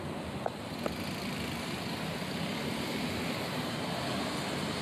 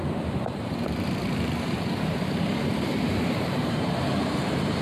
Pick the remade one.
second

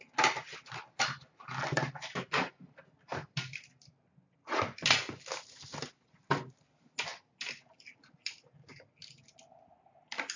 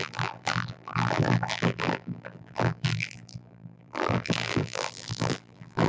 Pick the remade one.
second